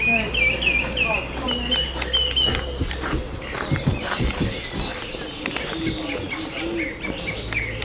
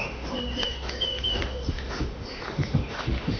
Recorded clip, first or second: first